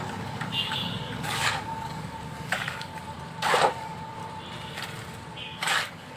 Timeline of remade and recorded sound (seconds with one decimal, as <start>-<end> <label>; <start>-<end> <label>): 0.0-2.9 remade; 2.9-3.7 recorded; 3.7-4.2 remade; 4.2-5.4 recorded; 5.4-6.2 remade